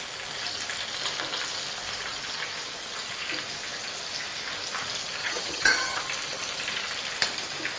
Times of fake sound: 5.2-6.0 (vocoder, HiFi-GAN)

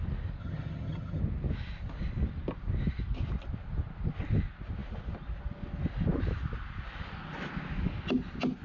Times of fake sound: 0.4-1.2 (vocoder, HiFi-GAN)

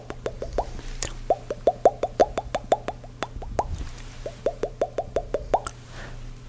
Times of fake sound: none

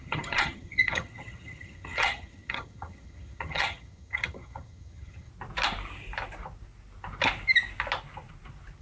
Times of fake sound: 0.0-5.3 (vocoder, HiFi-GAN)

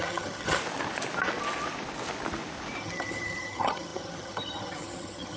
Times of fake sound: 0.0-0.6 (vocoder, HiFi-GAN); 2.8-5.4